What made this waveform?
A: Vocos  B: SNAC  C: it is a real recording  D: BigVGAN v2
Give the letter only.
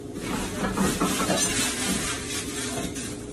C